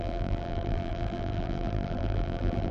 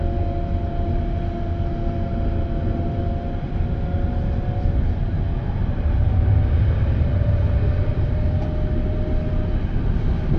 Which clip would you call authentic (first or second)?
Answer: second